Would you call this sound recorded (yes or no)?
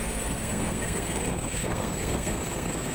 no